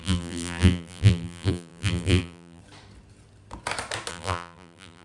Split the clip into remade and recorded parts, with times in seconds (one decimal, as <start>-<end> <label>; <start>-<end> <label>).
0.0-2.6 remade; 2.6-4.1 recorded; 4.1-5.0 remade